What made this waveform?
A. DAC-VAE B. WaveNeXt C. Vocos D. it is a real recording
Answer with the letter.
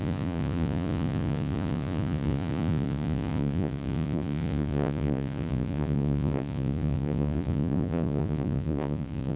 C